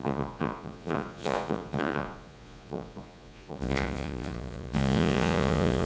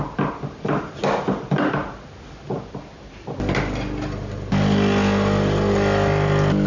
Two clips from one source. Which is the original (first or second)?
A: second